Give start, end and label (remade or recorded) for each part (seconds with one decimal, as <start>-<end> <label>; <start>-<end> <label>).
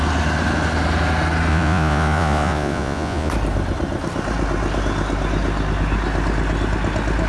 0.0-1.5 recorded; 1.5-3.3 remade; 3.3-7.3 recorded